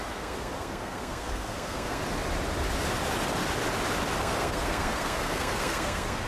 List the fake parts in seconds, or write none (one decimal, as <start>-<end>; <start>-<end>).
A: 0.0-2.0; 4.2-6.3